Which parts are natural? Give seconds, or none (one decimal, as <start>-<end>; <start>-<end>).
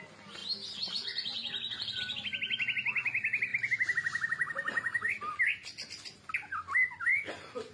0.0-7.7